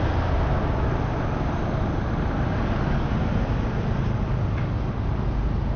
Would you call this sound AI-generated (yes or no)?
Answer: no